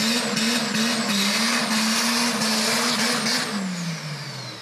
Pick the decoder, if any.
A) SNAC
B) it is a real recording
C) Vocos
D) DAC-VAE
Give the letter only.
B